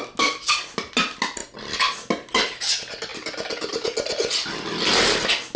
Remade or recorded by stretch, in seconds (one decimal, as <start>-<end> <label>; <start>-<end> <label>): 0.0-5.6 recorded